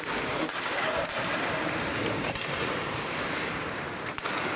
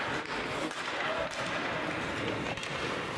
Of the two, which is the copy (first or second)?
first